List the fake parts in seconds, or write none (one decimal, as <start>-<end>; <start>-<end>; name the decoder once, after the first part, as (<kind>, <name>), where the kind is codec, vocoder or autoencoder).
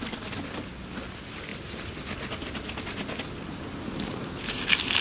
none